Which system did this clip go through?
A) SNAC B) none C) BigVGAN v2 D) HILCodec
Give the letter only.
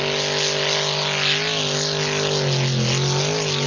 B